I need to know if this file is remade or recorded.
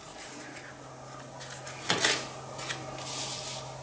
recorded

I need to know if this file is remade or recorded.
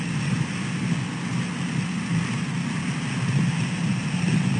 recorded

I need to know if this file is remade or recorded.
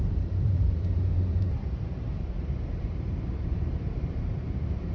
remade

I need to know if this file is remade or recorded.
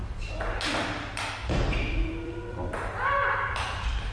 remade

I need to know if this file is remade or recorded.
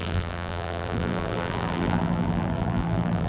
remade